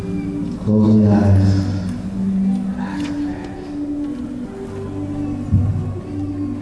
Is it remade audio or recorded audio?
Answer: recorded